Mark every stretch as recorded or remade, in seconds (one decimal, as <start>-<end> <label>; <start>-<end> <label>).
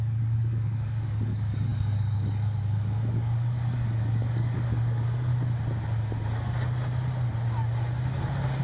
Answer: 0.0-5.3 remade; 5.3-8.6 recorded